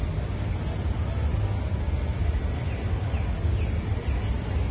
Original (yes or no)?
yes